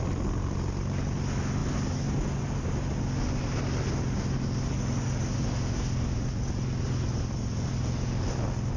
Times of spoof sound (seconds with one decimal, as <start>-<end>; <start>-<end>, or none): none